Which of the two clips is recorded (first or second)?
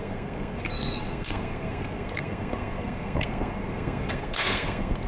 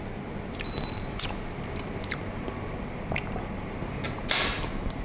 second